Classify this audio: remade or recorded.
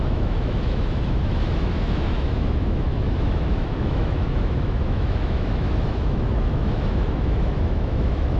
remade